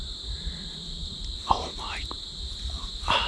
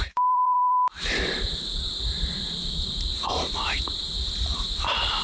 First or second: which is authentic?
first